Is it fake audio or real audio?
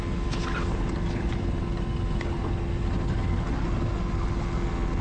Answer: real